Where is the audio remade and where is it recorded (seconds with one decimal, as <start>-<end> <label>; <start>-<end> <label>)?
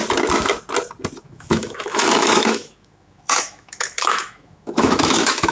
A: 0.0-1.2 recorded; 1.2-5.5 remade